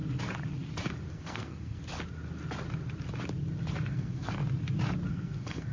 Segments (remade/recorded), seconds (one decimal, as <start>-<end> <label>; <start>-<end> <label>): 0.0-1.1 recorded; 1.1-1.8 remade; 1.8-3.9 recorded; 3.9-4.4 remade; 4.4-5.1 recorded; 5.1-5.7 remade